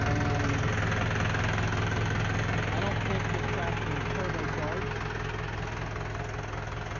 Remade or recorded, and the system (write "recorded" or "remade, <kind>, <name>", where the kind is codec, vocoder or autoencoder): recorded